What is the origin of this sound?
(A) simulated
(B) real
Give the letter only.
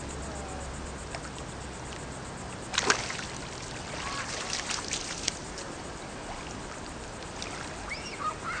B